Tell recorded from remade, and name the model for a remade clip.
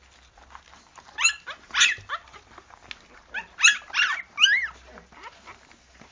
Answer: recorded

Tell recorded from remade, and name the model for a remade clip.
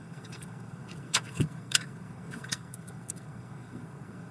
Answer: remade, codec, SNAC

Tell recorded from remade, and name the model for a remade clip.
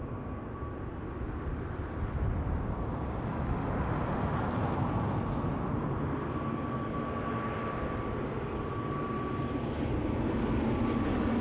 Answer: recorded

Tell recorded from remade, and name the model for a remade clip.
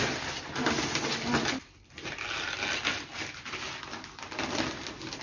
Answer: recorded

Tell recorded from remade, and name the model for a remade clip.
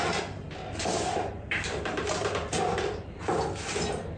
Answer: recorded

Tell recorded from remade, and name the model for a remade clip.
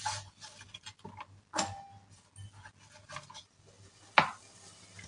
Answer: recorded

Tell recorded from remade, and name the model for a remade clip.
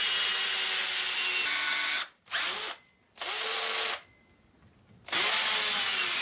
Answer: recorded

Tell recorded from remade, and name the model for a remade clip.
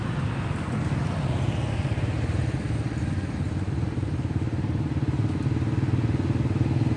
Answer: recorded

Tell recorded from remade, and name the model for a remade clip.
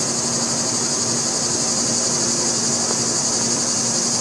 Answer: recorded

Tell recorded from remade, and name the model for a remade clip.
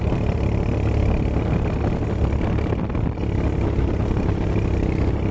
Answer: recorded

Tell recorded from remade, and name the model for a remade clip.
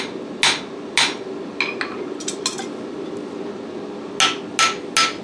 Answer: recorded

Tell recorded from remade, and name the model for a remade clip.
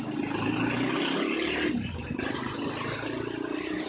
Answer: recorded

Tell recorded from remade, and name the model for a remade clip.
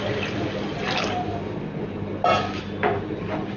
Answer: recorded